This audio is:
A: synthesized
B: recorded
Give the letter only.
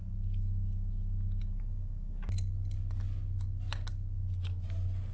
B